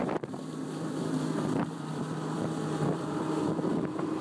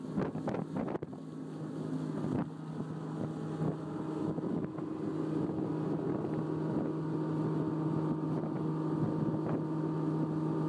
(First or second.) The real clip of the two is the second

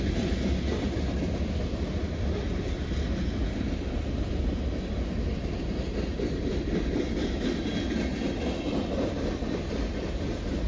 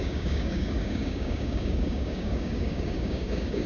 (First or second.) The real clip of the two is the first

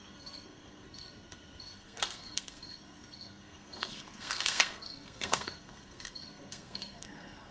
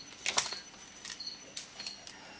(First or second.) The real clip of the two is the second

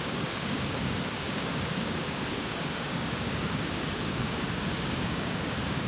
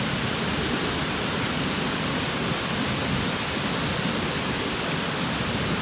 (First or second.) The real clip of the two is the second